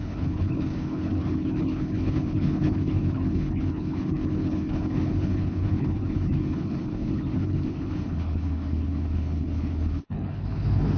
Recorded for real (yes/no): no